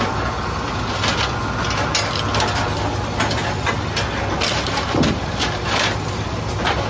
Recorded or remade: recorded